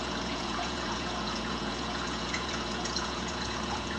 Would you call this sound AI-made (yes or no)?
yes